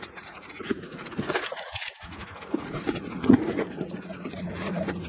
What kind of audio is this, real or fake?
fake